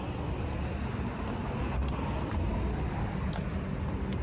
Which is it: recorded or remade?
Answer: recorded